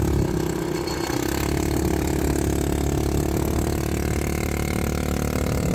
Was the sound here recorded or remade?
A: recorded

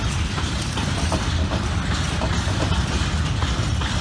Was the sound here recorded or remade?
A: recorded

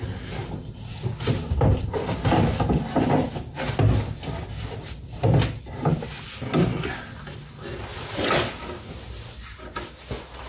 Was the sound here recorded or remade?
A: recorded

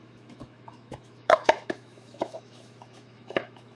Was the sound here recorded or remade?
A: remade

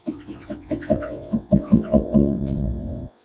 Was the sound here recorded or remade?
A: remade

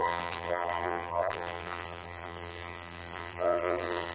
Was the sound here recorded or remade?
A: remade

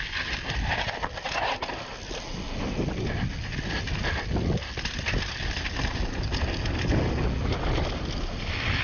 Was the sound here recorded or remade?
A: recorded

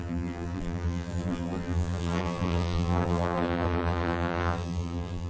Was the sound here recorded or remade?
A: remade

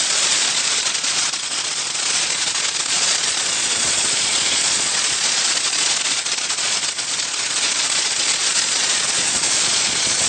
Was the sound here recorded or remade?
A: remade